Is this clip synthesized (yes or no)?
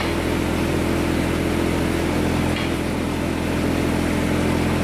no